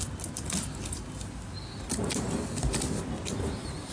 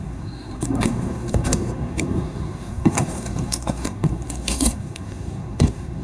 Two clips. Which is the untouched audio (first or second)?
first